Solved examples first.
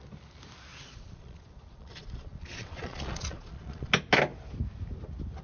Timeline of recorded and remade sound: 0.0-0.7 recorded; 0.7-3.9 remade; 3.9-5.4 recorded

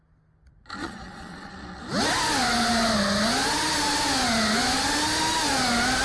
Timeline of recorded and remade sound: 0.0-0.8 recorded; 0.8-1.5 remade; 1.5-6.0 recorded

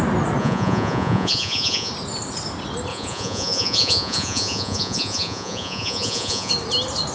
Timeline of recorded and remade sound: 0.0-0.4 recorded; 0.4-1.9 remade; 1.9-2.9 recorded; 2.9-6.5 remade; 6.5-7.1 recorded

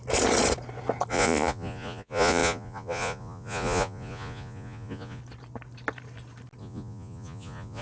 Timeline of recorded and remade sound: 0.0-1.1 recorded; 1.1-5.2 remade; 5.2-6.6 recorded; 6.6-7.8 remade

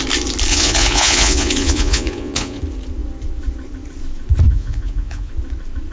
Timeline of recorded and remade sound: 0.0-0.5 recorded; 0.5-2.6 remade; 2.6-4.5 recorded; 4.5-5.3 remade; 5.3-5.9 recorded

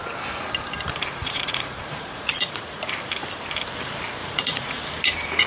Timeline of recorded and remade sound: 0.0-1.2 recorded; 1.2-2.8 remade; 2.8-4.2 recorded; 4.2-4.8 remade; 4.8-5.5 recorded

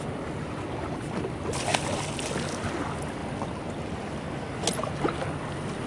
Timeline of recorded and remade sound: 0.0-5.9 recorded

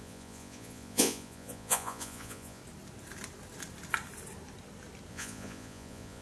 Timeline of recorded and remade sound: 0.0-2.6 remade; 2.6-5.1 recorded; 5.1-6.2 remade